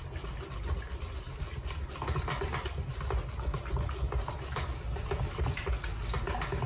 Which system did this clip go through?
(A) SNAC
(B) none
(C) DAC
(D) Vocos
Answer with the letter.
B